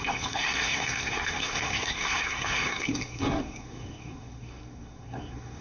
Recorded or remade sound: remade